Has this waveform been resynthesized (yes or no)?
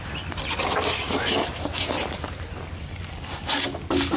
no